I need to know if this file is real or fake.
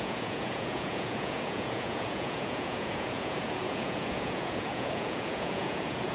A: fake